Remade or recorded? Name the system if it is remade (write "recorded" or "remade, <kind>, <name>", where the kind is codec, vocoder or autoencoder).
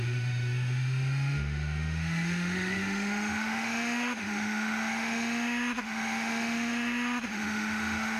remade, autoencoder, DAC-VAE